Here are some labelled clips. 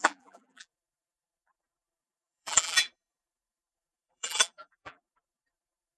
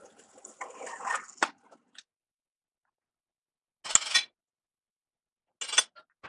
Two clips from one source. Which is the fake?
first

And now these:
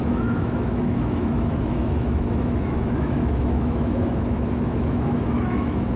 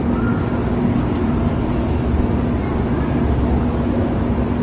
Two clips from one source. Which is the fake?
first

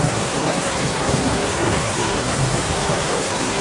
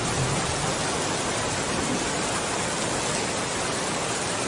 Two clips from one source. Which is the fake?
first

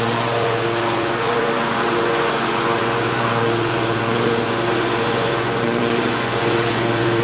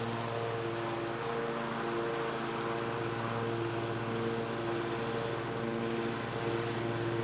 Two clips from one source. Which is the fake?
first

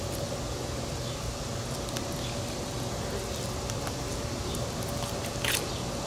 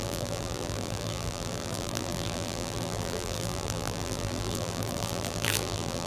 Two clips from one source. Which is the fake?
second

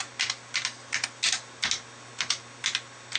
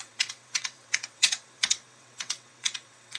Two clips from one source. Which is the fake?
second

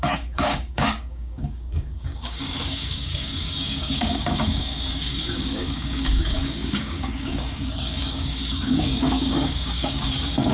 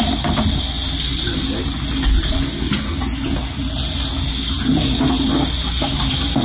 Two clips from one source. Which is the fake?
first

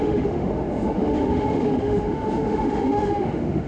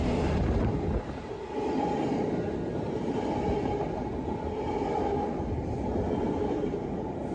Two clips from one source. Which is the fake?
first